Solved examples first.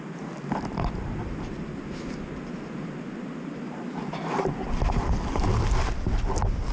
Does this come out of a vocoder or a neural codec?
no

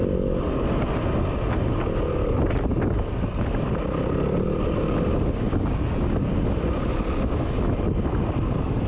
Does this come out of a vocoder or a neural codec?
no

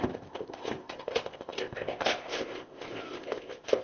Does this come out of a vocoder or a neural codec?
yes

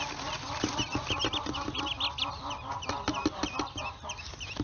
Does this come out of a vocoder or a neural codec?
no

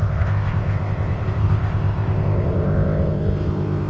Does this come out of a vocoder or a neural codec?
yes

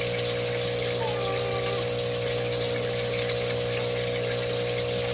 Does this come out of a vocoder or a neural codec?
no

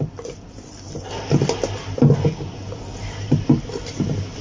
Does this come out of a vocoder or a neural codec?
no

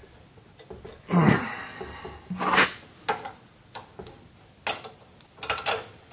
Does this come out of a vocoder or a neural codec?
no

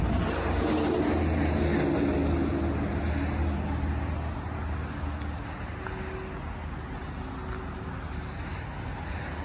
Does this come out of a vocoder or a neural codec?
no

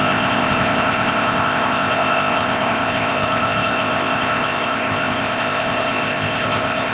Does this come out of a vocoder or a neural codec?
yes